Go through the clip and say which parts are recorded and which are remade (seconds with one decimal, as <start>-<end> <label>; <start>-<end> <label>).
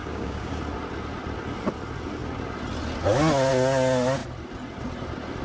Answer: 0.0-0.6 remade; 0.6-5.4 recorded